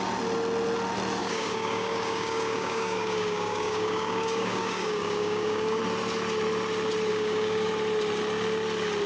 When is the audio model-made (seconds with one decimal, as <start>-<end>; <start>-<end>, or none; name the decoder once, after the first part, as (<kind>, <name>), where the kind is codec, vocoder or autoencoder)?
1.2-5.8 (codec, DAC); 7.1-7.7